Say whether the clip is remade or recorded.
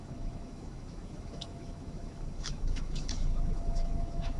remade